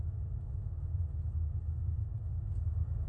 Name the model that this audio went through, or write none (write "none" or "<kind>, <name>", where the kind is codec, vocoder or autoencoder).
none